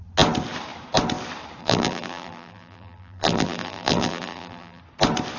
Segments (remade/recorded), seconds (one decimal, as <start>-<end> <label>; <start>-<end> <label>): 0.0-1.6 recorded; 1.6-4.8 remade; 4.8-5.4 recorded